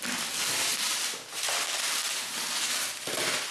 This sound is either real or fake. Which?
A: real